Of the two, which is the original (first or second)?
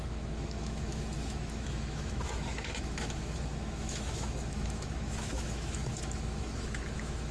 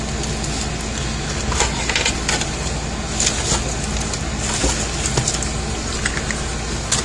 second